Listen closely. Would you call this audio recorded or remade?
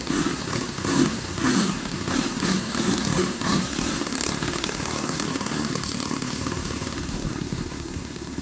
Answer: remade